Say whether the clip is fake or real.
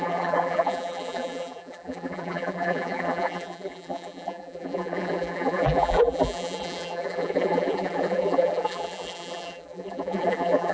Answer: fake